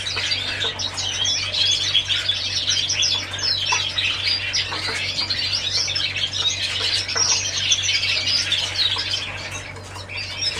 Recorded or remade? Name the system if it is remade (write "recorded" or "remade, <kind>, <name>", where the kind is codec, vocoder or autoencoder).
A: recorded